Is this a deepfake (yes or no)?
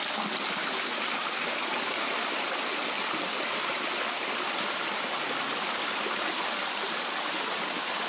no